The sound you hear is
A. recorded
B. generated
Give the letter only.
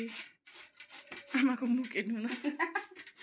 A